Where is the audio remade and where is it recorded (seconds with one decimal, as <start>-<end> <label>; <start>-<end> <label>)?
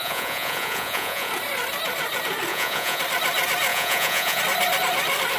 0.0-1.3 remade; 1.3-2.5 recorded; 2.5-3.0 remade; 3.0-3.7 recorded; 3.7-4.4 remade; 4.4-5.4 recorded